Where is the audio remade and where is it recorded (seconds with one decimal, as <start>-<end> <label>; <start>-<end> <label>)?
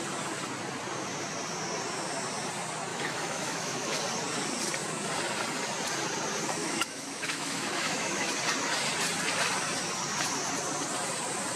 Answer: 0.0-2.9 recorded; 2.9-4.0 remade; 4.0-6.6 recorded; 6.6-8.3 remade; 8.3-11.6 recorded